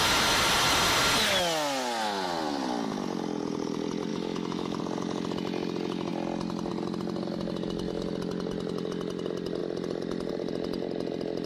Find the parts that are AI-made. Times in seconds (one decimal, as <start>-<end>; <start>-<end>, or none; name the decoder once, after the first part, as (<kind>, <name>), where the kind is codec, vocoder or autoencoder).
4.1-4.8 (autoencoder, DAC-VAE)